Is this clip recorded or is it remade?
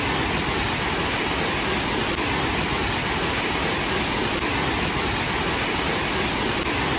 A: recorded